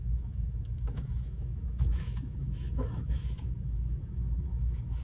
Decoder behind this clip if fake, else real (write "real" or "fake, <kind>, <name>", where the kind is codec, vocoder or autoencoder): fake, autoencoder, DAC-VAE